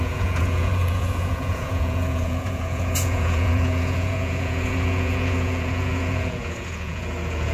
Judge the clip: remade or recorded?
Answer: remade